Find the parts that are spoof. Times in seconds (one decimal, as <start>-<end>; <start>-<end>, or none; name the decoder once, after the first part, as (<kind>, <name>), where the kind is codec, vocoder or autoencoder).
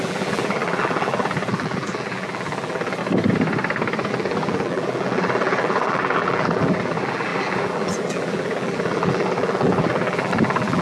0.0-3.0 (vocoder, BigVGAN v2); 4.1-10.8